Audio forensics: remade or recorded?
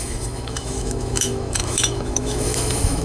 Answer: remade